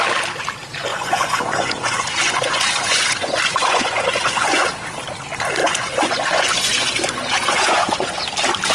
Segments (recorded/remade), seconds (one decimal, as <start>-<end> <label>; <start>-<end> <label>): 0.0-0.9 recorded; 0.9-4.7 remade; 4.7-5.6 recorded; 5.6-8.2 remade; 8.2-8.7 recorded